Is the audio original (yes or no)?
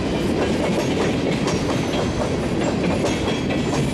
yes